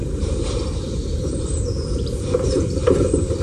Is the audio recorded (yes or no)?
no